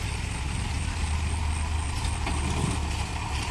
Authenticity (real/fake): real